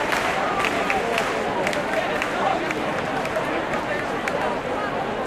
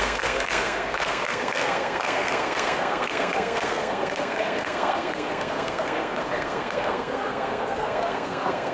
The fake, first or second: second